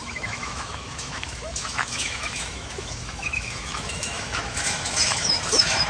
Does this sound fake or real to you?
fake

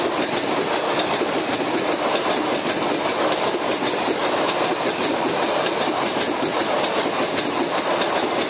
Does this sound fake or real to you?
real